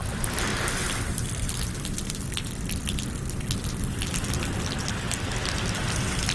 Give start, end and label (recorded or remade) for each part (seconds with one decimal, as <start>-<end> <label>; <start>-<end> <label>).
0.0-6.3 recorded